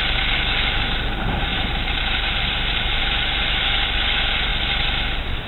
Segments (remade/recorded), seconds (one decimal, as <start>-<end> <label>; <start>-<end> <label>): 0.0-1.5 recorded; 1.5-3.0 remade; 3.0-5.5 recorded